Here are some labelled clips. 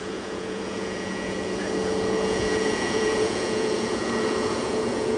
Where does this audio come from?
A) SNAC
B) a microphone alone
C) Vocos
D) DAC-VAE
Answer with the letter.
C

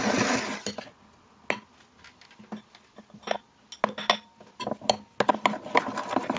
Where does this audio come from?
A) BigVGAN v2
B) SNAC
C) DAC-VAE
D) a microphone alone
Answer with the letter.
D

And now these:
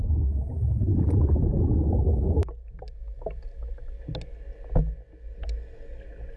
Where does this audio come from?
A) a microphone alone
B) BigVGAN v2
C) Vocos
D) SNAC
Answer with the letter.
A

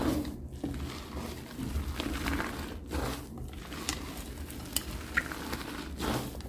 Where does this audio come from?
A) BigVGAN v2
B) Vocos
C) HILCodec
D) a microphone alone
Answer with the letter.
D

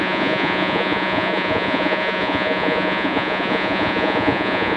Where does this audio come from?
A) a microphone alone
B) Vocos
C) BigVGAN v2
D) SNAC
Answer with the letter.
B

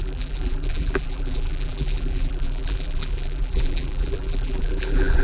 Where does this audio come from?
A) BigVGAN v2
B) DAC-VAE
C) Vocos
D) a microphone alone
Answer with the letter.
A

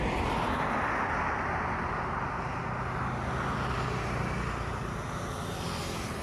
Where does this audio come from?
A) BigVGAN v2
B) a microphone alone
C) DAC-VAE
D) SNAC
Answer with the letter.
B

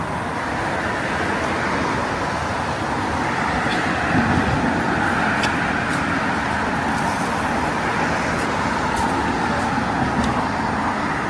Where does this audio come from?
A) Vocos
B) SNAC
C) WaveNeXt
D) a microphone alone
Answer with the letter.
D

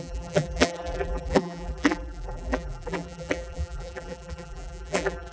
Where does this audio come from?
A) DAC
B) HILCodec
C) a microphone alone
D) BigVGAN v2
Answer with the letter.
D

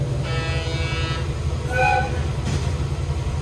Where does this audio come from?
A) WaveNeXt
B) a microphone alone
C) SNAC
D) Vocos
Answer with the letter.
B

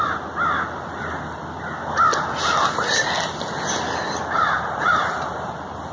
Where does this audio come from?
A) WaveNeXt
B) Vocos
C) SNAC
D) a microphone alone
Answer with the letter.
D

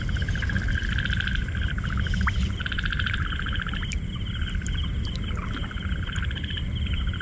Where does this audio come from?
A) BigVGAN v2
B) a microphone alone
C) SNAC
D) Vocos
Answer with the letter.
B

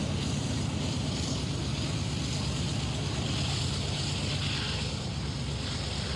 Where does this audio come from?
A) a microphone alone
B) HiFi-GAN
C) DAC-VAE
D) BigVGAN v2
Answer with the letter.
A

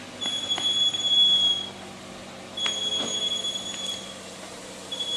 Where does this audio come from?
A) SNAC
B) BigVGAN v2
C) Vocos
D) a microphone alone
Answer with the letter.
D